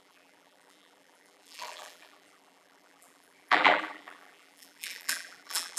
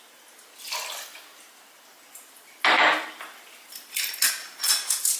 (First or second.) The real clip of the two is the second